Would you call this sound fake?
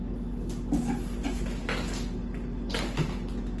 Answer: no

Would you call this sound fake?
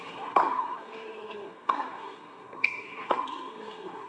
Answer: yes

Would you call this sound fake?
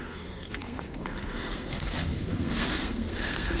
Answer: yes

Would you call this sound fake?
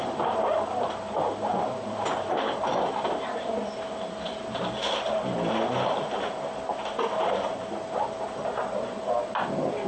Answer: no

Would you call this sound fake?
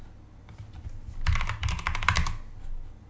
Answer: no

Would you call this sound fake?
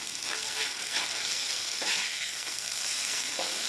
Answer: yes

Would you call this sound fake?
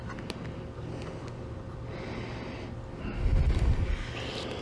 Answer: no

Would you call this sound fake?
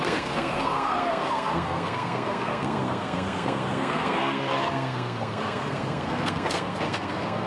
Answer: yes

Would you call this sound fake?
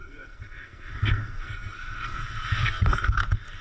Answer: yes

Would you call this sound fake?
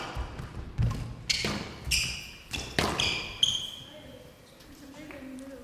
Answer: no